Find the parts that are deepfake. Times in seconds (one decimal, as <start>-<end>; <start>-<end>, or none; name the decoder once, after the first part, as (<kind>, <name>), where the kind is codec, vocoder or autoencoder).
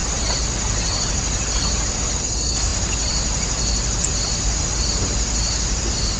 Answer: none